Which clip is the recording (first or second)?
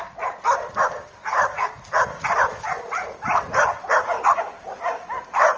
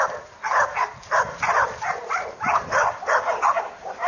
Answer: first